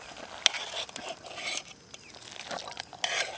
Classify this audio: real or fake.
real